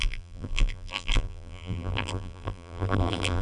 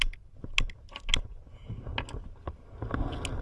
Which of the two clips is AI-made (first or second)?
first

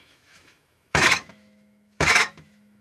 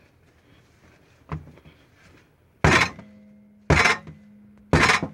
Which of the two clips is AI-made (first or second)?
first